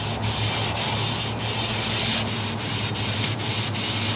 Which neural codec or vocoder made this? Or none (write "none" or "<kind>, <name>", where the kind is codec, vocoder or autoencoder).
none